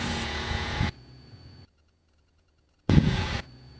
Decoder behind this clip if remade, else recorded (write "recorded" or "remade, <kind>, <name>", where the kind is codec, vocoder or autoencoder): remade, vocoder, Vocos